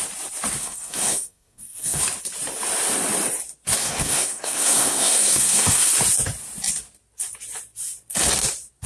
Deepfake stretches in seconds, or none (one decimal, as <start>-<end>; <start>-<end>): 0.6-2.0; 3.8-5.9